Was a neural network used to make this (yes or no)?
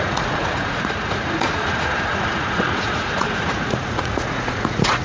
yes